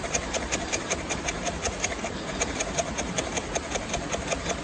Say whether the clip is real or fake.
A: fake